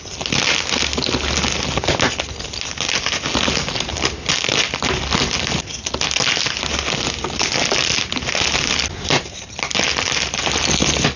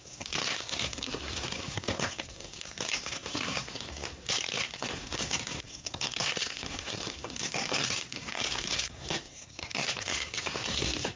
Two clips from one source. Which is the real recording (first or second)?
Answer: first